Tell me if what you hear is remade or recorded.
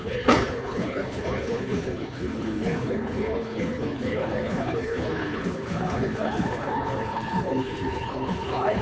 remade